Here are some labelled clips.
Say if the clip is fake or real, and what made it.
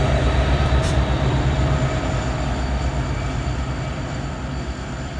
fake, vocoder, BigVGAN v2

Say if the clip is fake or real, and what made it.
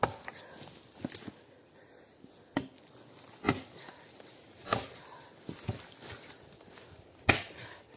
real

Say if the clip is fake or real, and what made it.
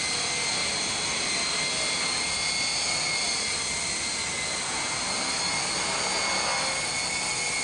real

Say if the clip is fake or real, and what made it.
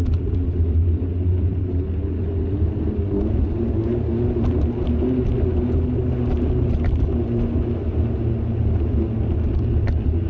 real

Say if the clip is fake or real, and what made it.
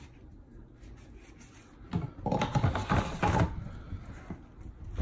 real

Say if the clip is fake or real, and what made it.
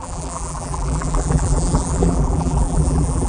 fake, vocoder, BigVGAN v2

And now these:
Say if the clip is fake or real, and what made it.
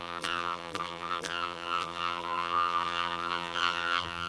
fake, vocoder, BigVGAN v2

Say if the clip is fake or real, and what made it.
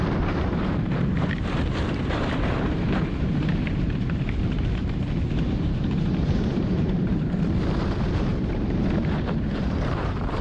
fake, vocoder, BigVGAN v2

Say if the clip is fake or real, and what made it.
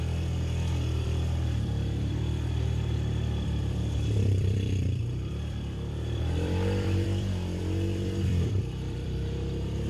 fake, vocoder, BigVGAN v2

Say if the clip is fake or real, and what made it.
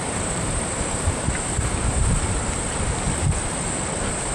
fake, vocoder, BigVGAN v2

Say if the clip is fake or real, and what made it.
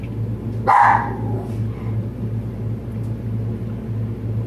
real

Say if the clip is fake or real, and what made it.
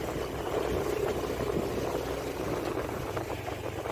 real